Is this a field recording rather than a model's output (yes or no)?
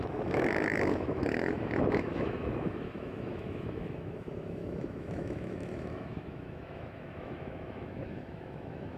no